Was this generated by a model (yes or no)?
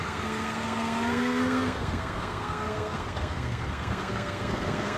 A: yes